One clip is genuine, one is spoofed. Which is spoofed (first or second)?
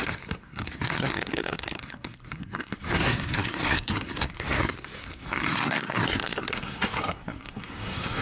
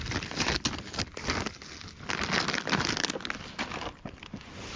first